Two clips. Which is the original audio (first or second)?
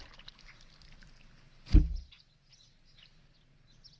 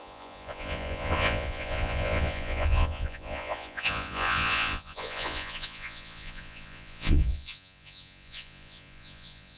first